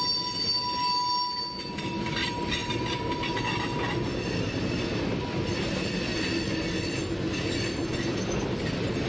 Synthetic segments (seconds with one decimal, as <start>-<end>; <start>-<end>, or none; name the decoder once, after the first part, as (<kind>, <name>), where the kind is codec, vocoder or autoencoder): none